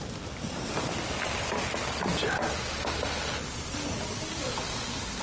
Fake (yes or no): no